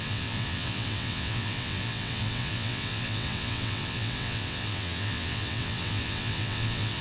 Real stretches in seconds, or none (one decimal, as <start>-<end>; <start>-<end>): none